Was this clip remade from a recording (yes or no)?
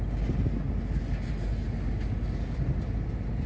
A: no